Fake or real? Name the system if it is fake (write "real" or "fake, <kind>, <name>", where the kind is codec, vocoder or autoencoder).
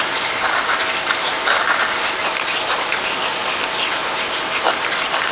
real